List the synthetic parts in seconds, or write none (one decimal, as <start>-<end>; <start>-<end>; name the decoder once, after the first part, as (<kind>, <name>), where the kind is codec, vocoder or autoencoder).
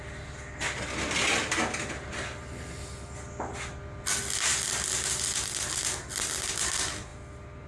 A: none